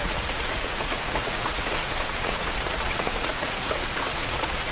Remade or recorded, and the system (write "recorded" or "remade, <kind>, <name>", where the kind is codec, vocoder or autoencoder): remade, vocoder, Vocos